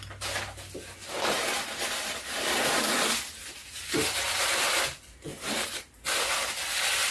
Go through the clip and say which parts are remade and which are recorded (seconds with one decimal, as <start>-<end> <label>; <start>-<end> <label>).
0.0-1.0 recorded; 1.0-2.8 remade; 2.8-3.6 recorded; 3.6-4.3 remade; 4.3-5.3 recorded; 5.3-5.9 remade; 5.9-7.1 recorded